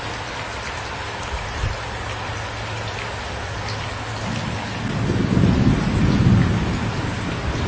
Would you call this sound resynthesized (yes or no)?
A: no